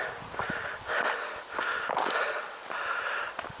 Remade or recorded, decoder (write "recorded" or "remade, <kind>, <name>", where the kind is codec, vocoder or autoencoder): recorded